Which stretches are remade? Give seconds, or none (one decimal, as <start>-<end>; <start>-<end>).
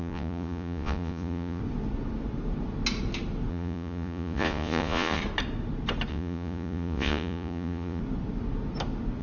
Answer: 0.0-1.6; 3.5-5.2; 6.1-8.0